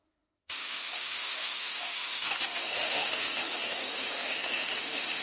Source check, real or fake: fake